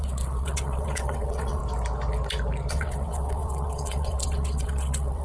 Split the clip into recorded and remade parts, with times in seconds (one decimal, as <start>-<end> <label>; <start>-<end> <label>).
0.0-1.6 remade; 1.6-2.7 recorded; 2.7-5.2 remade